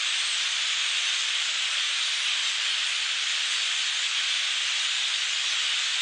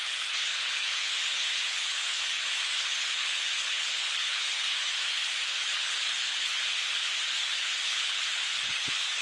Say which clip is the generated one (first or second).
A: second